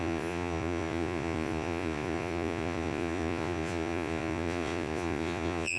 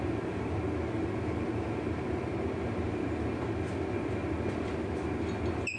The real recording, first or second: second